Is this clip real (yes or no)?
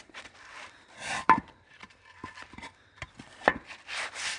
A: no